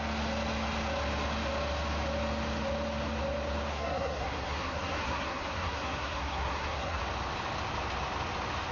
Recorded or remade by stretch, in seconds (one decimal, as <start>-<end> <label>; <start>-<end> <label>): 0.0-3.7 recorded; 3.7-7.0 remade; 7.0-8.7 recorded